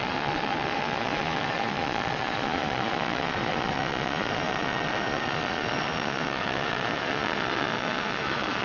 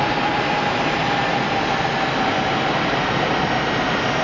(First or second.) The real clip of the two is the second